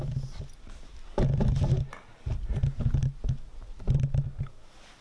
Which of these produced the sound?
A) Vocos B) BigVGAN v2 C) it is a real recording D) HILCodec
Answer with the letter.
C